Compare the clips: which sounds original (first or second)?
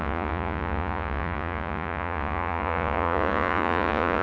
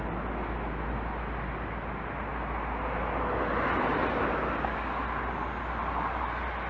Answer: second